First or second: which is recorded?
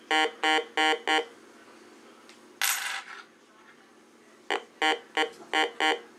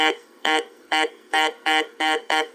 first